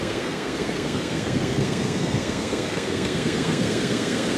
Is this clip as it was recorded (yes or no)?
no